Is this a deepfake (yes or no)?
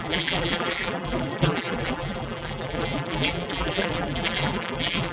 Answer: yes